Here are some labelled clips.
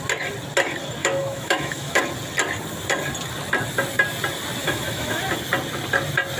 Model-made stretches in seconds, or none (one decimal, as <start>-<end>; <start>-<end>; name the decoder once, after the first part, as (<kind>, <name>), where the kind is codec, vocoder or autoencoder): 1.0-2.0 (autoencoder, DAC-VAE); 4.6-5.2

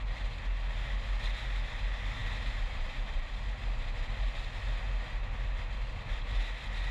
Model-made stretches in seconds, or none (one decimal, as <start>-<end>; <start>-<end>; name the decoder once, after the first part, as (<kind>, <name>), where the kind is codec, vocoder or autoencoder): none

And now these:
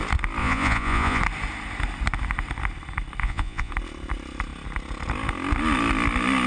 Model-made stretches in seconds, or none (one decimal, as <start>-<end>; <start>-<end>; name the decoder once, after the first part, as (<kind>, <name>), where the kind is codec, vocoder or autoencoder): 0.4-1.2 (vocoder, Vocos); 3.2-3.7

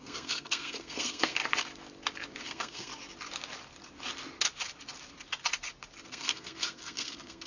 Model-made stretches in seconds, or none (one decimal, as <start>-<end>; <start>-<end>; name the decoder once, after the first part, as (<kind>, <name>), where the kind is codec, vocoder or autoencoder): 0.0-1.4 (codec, SNAC); 2.4-2.9; 6.1-7.5

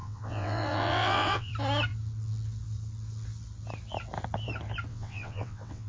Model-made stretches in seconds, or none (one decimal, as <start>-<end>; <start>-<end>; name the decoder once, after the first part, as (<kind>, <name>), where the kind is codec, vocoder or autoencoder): 0.0-1.5 (vocoder, WaveNeXt); 4.9-5.9

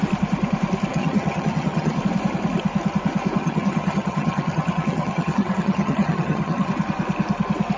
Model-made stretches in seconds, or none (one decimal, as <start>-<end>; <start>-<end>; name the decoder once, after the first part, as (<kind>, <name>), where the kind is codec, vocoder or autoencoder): 0.9-2.0 (vocoder, HiFi-GAN); 3.4-6.7